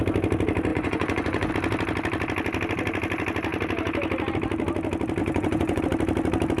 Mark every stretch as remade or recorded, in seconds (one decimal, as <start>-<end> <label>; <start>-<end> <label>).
0.0-0.7 recorded; 0.7-1.5 remade; 1.5-5.2 recorded; 5.2-5.8 remade; 5.8-6.6 recorded